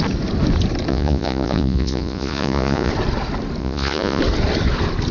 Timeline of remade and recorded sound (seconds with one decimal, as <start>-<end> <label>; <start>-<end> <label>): 0.0-0.9 recorded; 0.9-2.9 remade; 2.9-3.6 recorded; 3.6-4.2 remade; 4.2-5.1 recorded